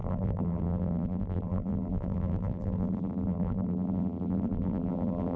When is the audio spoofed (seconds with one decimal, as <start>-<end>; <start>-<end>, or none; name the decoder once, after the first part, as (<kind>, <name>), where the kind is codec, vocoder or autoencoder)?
0.0-5.4 (vocoder, BigVGAN v2)